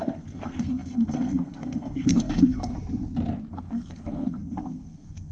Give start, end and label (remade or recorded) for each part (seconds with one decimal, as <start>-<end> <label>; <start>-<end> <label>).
0.0-2.7 remade; 2.7-3.5 recorded; 3.5-5.3 remade

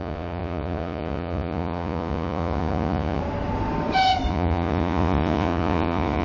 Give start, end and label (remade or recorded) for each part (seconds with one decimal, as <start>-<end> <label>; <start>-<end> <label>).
0.0-3.2 remade; 3.2-4.3 recorded; 4.3-6.2 remade

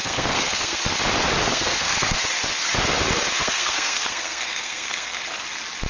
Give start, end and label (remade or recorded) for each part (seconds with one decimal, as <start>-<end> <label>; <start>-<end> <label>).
0.0-0.8 remade; 0.8-1.5 recorded; 1.5-2.2 remade; 2.2-3.4 recorded; 3.4-5.2 remade; 5.2-5.9 recorded

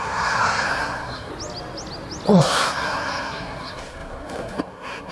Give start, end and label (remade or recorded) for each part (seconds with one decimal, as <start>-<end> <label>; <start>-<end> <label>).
0.0-1.3 remade; 1.3-2.4 recorded; 2.4-5.1 remade

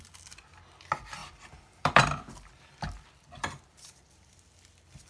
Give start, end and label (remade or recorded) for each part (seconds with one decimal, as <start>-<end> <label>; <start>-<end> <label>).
0.0-1.2 recorded; 1.2-4.3 remade; 4.3-5.1 recorded

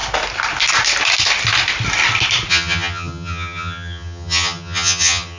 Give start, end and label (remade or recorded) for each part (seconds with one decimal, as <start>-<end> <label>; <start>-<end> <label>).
0.0-2.5 recorded; 2.5-5.4 remade